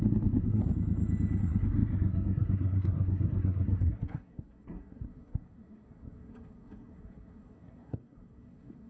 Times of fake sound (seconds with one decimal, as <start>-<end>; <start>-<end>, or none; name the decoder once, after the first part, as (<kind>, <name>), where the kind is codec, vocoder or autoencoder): 0.0-0.6 (codec, SNAC); 1.4-8.9